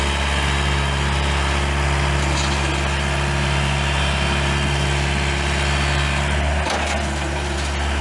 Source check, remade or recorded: recorded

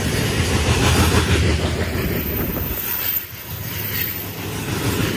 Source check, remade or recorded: recorded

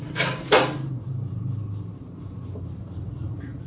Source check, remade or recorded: remade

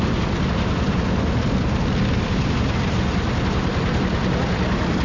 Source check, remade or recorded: recorded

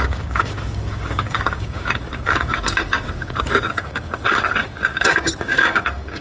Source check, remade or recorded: remade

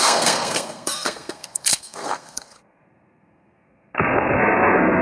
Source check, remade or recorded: remade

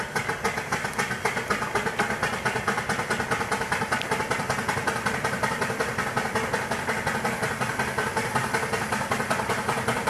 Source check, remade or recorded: recorded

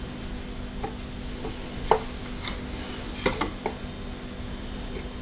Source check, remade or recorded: recorded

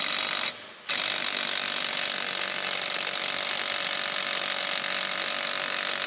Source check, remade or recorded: recorded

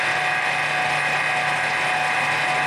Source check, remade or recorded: recorded